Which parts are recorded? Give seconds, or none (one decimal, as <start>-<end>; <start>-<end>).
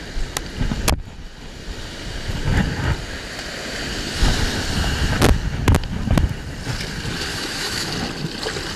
0.0-7.3; 7.9-8.8